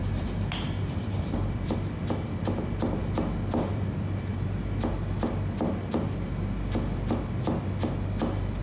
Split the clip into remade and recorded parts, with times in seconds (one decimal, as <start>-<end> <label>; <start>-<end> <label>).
0.0-0.9 recorded; 0.9-3.0 remade; 3.0-3.7 recorded; 3.7-4.3 remade; 4.3-8.6 recorded